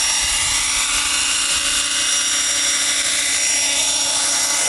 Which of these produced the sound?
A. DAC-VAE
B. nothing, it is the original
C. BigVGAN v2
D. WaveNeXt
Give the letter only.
B